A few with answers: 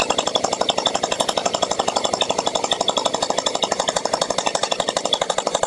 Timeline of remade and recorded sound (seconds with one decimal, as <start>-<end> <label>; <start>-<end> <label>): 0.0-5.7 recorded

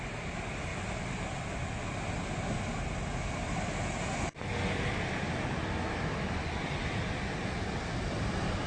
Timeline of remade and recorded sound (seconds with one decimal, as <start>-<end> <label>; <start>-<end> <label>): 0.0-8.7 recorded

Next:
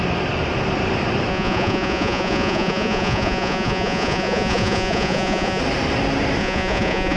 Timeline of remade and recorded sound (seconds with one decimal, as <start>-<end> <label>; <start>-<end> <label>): 0.0-1.3 recorded; 1.3-5.6 remade; 5.6-6.4 recorded; 6.4-7.2 remade